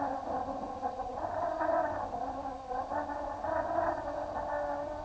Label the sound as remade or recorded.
recorded